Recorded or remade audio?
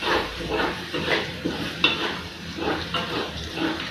remade